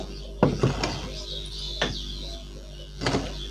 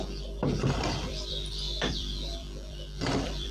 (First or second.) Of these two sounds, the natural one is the first